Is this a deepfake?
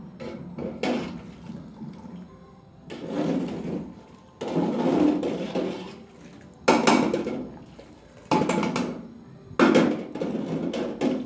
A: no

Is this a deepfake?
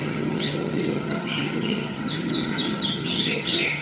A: yes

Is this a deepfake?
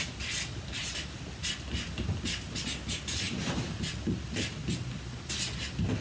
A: no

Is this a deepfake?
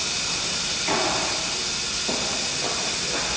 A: no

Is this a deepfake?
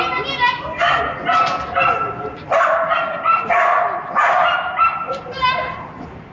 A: no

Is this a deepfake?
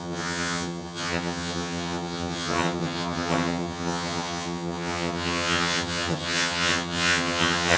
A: yes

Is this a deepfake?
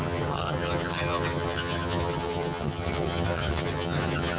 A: yes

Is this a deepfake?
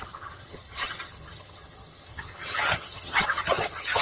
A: yes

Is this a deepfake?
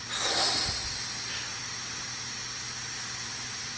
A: no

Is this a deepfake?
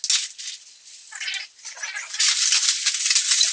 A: no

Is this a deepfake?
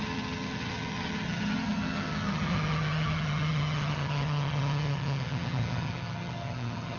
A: yes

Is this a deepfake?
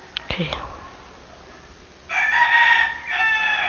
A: no